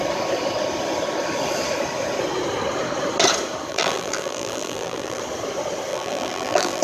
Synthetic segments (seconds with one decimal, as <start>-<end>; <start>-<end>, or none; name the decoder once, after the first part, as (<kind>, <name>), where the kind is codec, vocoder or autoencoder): 3.7-5.2 (vocoder, BigVGAN v2); 5.9-6.8